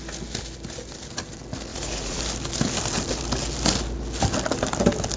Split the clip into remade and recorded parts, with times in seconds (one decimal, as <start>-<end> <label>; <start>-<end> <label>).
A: 0.0-1.7 recorded; 1.7-2.2 remade; 2.2-5.2 recorded